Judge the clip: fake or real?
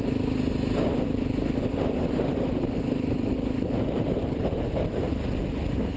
real